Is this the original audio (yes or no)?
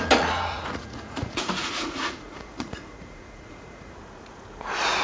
no